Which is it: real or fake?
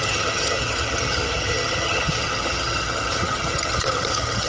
fake